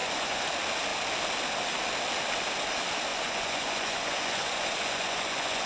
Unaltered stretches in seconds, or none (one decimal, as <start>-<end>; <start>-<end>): 0.5-3.1